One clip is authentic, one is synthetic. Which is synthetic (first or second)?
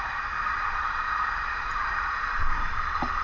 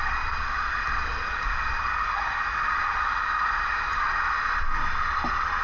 first